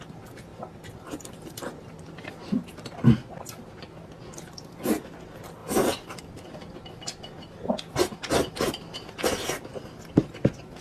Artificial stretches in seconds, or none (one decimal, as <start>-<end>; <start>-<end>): 5.6-6.2